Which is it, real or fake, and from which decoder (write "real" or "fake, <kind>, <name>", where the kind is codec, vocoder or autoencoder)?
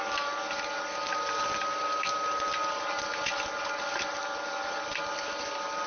real